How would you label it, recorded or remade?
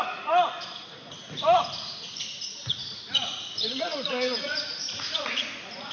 remade